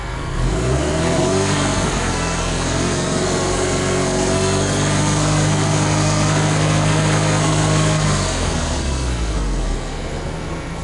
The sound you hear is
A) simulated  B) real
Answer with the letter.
A